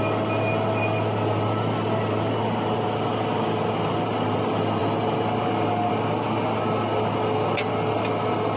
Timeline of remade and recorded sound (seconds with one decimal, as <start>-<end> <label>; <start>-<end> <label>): 0.0-8.6 recorded

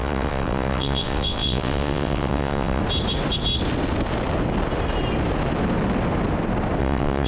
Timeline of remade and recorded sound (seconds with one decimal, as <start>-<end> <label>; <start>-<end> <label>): 0.0-2.8 remade; 2.8-6.8 recorded; 6.8-7.3 remade